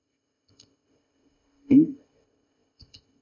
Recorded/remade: remade